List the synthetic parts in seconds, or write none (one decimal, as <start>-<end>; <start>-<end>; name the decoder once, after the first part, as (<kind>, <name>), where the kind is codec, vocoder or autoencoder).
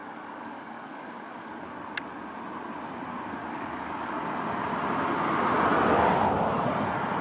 0.0-1.5 (codec, DAC); 3.4-4.2